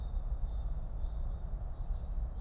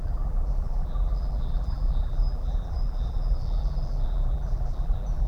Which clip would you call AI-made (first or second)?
second